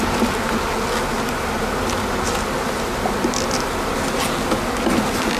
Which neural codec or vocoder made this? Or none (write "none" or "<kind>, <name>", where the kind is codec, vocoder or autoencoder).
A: none